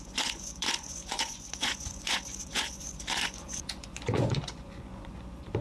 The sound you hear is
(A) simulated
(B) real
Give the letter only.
A